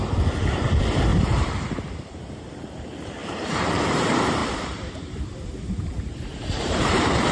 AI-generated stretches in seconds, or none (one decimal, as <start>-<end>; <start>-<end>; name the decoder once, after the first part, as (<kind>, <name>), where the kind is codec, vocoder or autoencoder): 0.0-7.3 (vocoder, BigVGAN v2)